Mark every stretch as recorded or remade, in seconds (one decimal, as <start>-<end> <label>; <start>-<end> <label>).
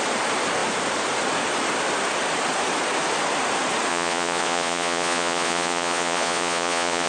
0.0-3.9 recorded; 3.9-7.1 remade